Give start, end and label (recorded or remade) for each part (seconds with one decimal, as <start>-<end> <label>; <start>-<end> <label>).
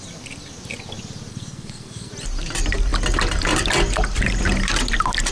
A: 0.0-1.3 recorded; 1.3-2.1 remade; 2.1-5.3 recorded